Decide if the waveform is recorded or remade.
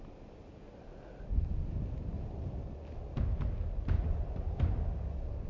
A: recorded